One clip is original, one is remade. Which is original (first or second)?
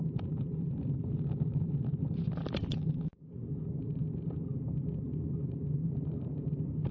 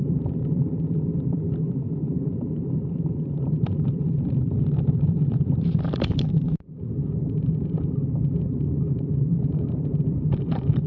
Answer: first